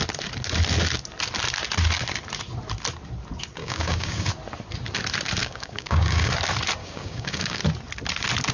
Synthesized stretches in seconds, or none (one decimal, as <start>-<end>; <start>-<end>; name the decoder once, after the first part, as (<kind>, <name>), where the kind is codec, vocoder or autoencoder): 3.6-4.3 (codec, DAC); 5.4-6.3; 6.8-7.6